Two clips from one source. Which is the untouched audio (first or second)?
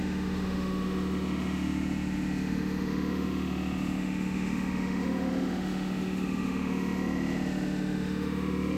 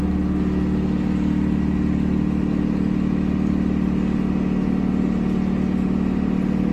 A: second